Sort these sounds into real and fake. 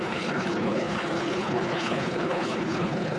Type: fake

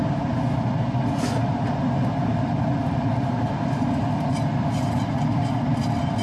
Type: real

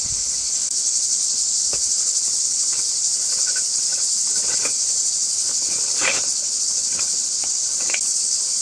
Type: fake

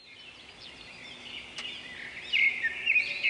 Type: real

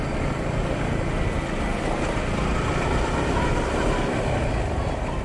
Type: real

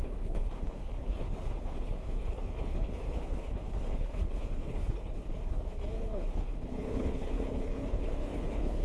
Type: fake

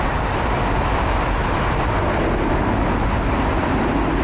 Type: real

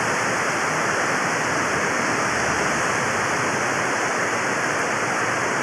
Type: real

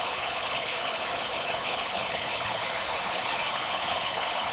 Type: fake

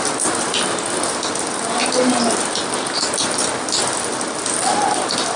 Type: real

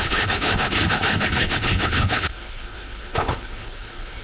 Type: fake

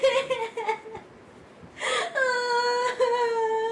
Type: real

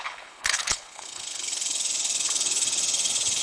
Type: fake